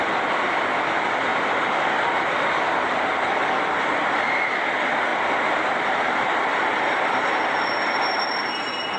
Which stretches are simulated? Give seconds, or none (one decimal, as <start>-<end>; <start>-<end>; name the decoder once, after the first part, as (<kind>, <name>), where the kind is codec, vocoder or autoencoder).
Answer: none